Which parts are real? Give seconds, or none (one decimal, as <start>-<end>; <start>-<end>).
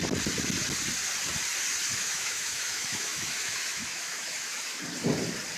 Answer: 0.0-1.9; 4.8-5.6